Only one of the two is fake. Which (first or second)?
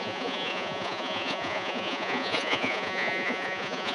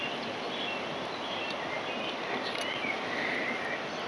first